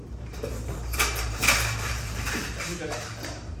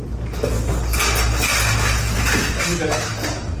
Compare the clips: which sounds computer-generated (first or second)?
first